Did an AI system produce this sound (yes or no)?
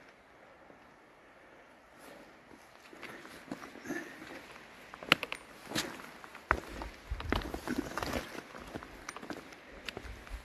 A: no